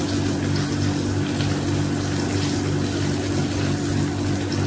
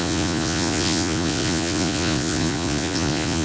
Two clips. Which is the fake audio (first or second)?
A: second